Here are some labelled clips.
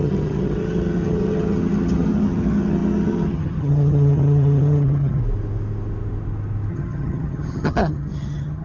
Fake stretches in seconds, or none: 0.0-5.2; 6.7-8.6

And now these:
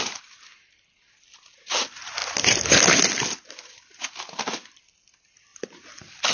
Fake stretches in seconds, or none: none

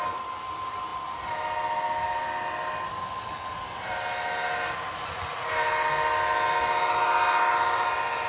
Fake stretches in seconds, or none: none

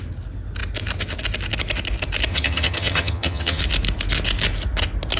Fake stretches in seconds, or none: 2.3-3.6